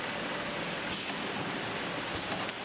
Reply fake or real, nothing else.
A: real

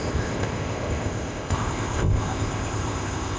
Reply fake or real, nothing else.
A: fake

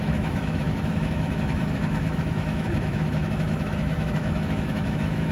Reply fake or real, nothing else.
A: fake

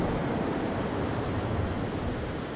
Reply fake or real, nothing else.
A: real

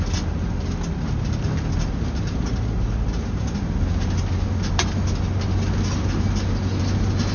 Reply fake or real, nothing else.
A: real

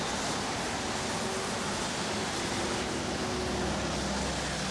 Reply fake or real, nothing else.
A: real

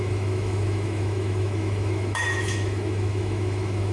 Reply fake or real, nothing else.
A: fake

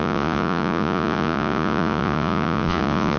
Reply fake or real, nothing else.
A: fake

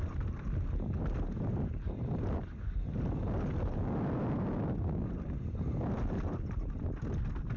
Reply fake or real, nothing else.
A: real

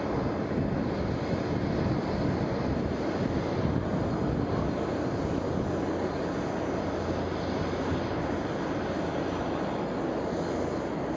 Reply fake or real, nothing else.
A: real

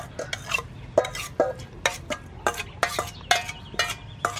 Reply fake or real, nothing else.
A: real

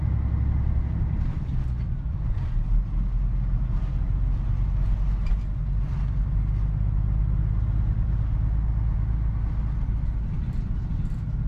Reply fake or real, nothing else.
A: real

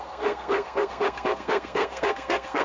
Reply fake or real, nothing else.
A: fake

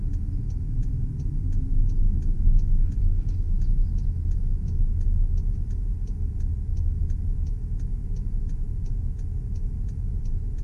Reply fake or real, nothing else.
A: real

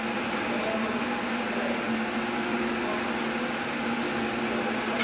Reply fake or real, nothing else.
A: real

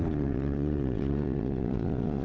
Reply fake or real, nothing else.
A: fake